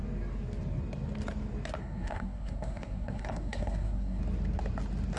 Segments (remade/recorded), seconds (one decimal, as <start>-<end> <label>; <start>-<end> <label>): 0.0-1.8 recorded; 1.8-4.2 remade; 4.2-5.2 recorded